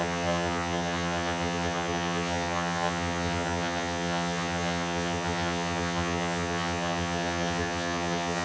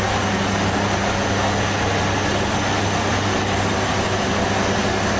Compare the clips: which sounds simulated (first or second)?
first